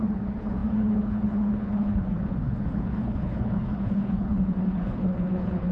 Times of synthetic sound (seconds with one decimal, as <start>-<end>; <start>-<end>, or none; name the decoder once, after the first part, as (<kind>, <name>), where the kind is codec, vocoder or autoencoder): 0.0-5.7 (codec, HILCodec)

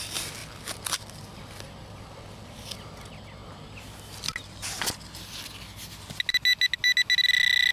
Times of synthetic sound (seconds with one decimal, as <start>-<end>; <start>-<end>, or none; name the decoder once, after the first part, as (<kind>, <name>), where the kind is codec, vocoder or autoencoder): none